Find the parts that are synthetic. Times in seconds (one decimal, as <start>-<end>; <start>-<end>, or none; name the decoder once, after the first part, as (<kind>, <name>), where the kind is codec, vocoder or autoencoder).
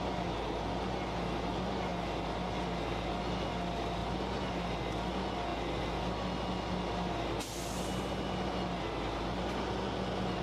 none